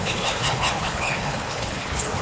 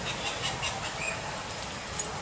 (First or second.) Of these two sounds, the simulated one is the first